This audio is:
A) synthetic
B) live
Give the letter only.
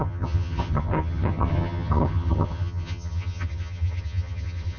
A